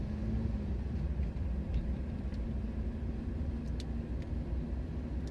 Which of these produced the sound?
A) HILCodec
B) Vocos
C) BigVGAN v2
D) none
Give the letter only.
D